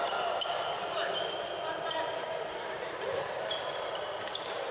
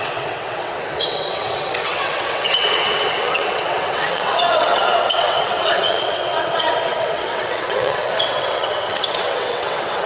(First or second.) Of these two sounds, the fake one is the second